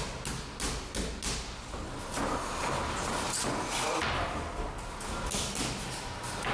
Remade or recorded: recorded